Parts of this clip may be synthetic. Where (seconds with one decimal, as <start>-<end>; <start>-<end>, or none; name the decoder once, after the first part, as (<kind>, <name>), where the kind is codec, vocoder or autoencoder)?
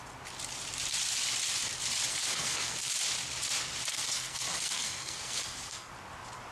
2.1-2.9 (codec, SNAC); 3.9-5.9